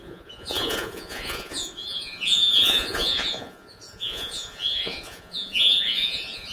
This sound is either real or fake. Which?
fake